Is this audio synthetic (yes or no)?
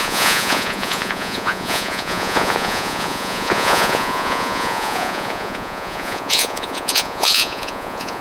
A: yes